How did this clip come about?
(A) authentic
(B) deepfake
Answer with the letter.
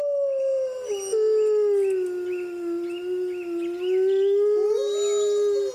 A